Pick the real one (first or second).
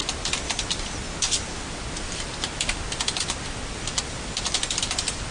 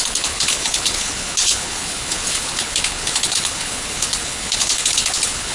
first